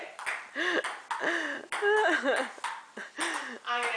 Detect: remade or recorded recorded